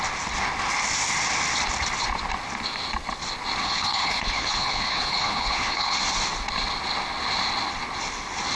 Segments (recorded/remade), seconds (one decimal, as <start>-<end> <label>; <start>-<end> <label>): 0.0-3.6 recorded; 3.6-6.0 remade; 6.0-8.6 recorded